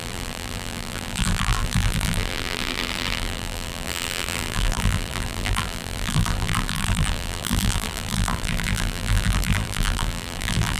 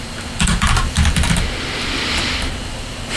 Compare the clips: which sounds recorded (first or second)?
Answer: second